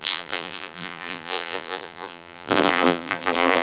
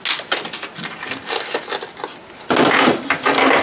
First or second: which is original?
second